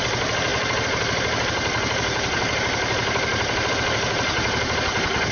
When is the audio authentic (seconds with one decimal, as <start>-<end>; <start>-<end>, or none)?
0.0-5.3